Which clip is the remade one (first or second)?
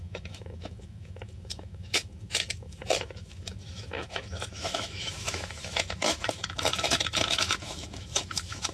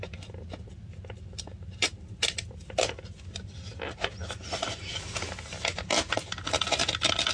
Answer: first